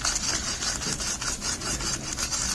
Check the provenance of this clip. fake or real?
real